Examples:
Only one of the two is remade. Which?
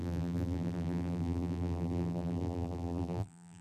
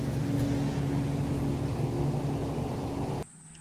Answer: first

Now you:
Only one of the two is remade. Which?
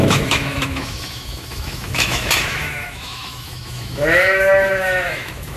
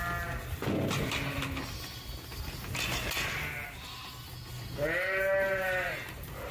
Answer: first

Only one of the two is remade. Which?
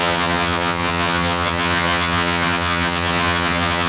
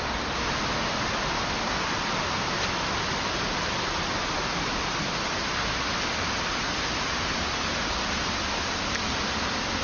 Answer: first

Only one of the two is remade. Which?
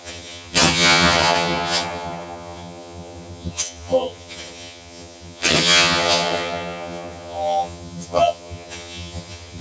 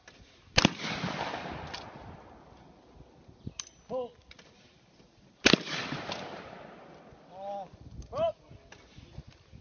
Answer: first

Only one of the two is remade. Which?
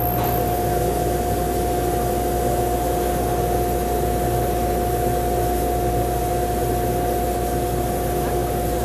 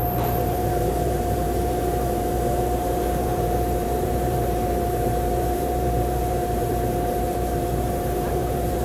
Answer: second